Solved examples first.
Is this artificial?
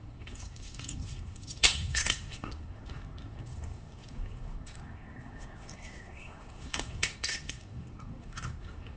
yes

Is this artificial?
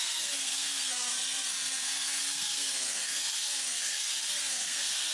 yes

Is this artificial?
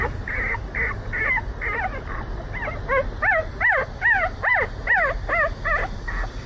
no